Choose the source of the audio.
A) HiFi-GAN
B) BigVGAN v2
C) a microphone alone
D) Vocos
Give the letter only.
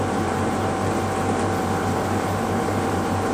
B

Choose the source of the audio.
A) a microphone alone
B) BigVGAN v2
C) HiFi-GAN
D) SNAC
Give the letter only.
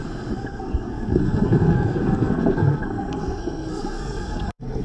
D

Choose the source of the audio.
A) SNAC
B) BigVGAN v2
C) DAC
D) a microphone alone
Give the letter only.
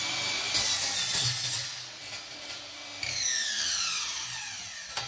D